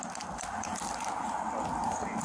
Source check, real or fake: real